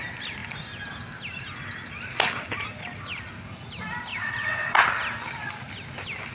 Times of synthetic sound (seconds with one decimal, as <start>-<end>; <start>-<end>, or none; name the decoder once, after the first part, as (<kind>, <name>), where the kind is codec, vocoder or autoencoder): 4.1-4.8 (vocoder, WaveNeXt)